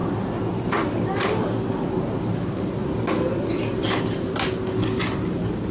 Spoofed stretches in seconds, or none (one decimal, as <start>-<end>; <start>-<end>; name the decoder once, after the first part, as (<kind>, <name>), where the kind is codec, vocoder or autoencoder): none

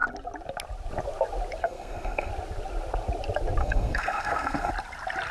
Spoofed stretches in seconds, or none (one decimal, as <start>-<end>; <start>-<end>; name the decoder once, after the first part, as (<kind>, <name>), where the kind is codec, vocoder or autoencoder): 1.6-2.3 (codec, SNAC); 3.6-4.7